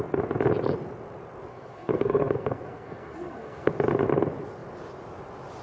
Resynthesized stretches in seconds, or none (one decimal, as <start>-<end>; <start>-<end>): 1.5-3.7